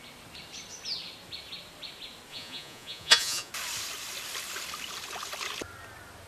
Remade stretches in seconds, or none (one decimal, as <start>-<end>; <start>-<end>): 2.3-3.5